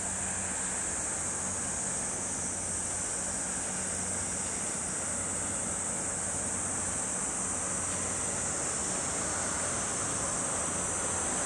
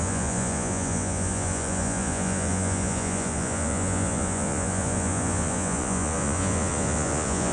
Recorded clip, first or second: first